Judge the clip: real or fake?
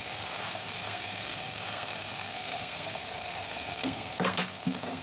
fake